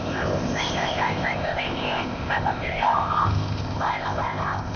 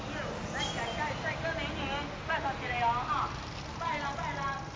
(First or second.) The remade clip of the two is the first